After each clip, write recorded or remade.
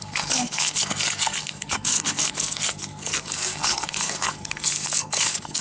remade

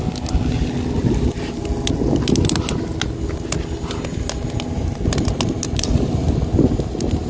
recorded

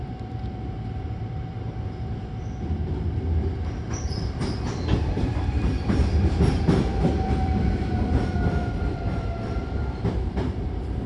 remade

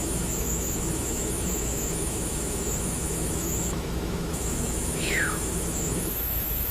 remade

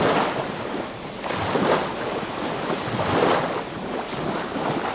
recorded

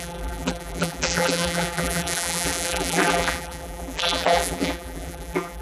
remade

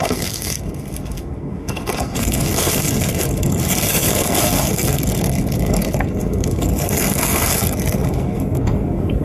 remade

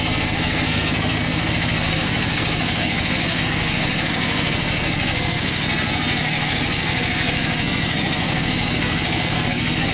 remade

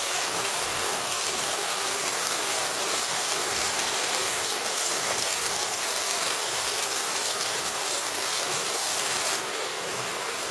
remade